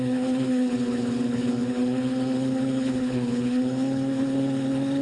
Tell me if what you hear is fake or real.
fake